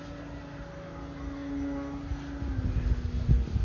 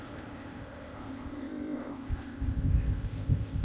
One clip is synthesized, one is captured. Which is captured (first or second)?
first